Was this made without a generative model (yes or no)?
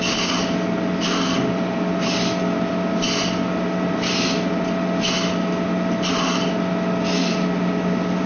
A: yes